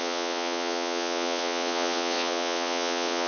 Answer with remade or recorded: remade